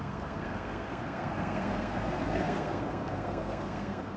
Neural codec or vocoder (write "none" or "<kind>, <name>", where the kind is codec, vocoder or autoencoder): codec, SNAC